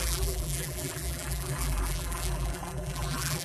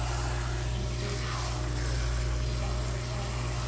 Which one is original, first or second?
second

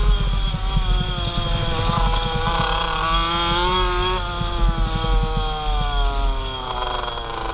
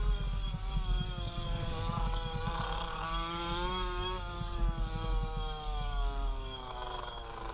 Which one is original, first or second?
first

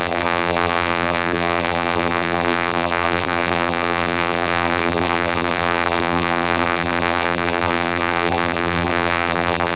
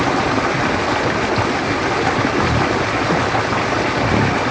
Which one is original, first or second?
second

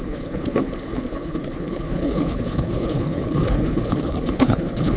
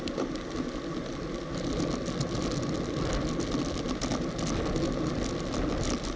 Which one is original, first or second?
second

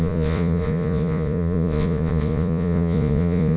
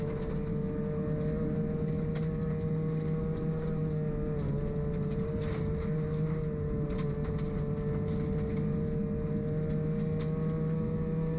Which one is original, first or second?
second